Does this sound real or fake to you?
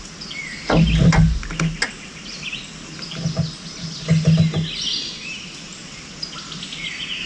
real